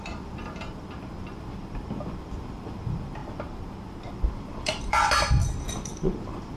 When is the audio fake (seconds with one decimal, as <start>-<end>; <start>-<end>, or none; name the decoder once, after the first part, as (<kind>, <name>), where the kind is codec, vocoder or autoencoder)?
0.0-3.2 (vocoder, BigVGAN v2); 4.3-6.6